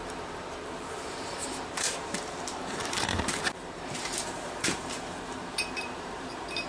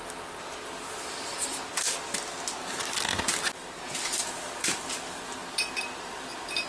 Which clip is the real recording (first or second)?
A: second